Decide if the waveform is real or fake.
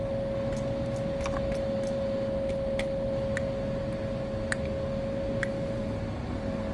real